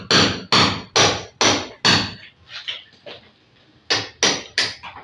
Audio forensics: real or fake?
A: real